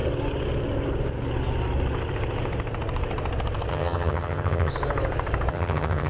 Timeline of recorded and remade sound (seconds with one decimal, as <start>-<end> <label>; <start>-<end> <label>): 0.0-3.7 recorded; 3.7-4.7 remade; 4.7-5.5 recorded; 5.5-6.1 remade